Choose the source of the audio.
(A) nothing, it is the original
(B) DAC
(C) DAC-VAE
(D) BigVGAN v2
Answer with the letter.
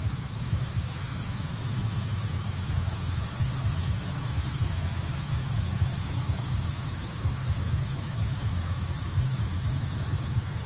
C